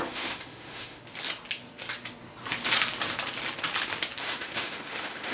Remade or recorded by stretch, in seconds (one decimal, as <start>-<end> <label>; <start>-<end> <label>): 0.0-1.0 remade; 1.0-4.2 recorded; 4.2-5.3 remade